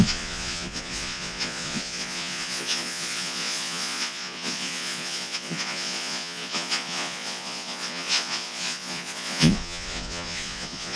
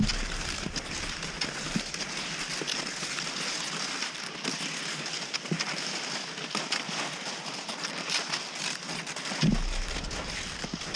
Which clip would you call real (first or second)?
second